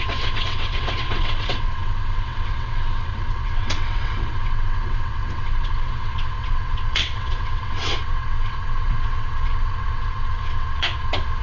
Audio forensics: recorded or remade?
remade